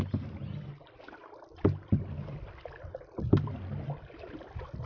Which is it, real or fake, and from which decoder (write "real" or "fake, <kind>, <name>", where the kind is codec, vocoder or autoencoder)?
real